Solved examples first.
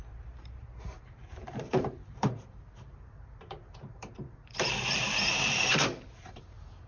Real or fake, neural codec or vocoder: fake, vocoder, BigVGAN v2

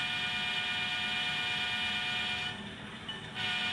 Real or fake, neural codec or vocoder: real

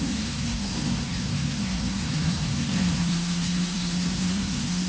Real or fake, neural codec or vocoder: fake, codec, SNAC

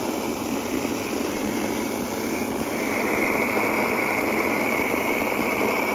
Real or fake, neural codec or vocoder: real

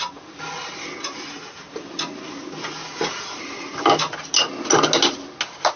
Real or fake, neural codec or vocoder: real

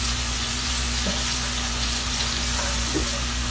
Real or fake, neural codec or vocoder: fake, vocoder, Vocos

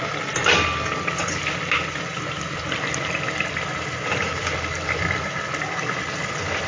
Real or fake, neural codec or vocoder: real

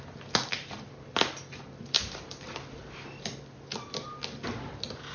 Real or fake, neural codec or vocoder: real